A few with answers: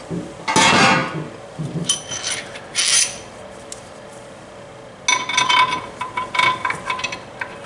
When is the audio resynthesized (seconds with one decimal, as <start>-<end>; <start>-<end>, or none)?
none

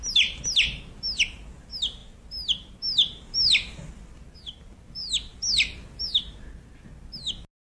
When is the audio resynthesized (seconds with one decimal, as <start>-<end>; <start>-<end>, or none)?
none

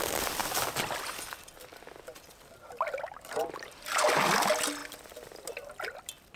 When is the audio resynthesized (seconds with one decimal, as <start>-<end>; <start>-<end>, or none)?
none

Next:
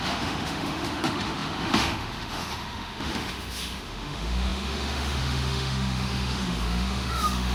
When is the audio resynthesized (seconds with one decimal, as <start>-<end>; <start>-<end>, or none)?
0.0-7.5